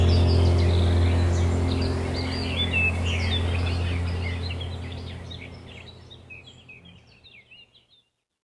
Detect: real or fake real